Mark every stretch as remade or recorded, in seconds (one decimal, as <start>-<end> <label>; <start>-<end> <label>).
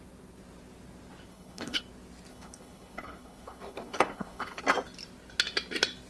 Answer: 0.0-1.3 recorded; 1.3-1.8 remade; 1.8-2.3 recorded; 2.3-4.6 remade; 4.6-6.1 recorded